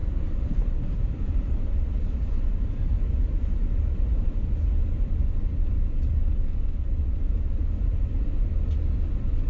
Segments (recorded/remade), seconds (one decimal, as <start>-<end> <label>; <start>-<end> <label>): 0.0-4.5 remade; 4.5-9.5 recorded

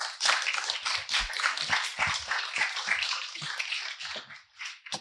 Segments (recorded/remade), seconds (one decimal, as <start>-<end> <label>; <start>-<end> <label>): 0.0-5.0 recorded

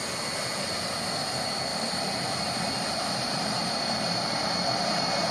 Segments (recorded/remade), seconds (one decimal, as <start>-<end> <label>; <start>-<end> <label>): 0.0-1.7 recorded; 1.7-5.3 remade

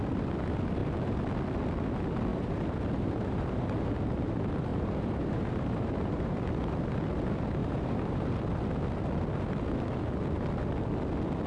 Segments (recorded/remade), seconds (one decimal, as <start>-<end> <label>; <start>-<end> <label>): 0.0-2.3 recorded; 2.3-3.9 remade; 3.9-4.7 recorded; 4.7-6.4 remade; 6.4-7.6 recorded; 7.6-8.3 remade; 8.3-11.5 recorded